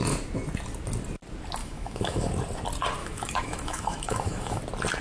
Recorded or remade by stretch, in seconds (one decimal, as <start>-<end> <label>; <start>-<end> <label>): 0.0-1.6 recorded; 1.6-2.3 remade; 2.3-3.0 recorded; 3.0-4.6 remade; 4.6-5.0 recorded